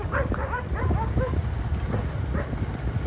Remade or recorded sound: recorded